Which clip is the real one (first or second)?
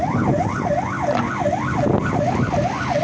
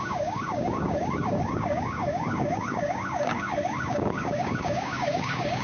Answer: first